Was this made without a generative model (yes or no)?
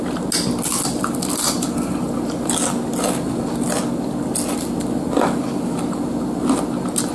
yes